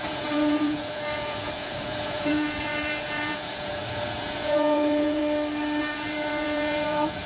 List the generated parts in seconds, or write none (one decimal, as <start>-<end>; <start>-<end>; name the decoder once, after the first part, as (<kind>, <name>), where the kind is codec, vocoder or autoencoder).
0.0-5.2 (vocoder, Vocos); 5.8-7.3